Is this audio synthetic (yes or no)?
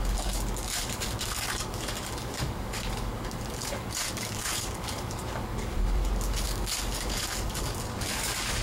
yes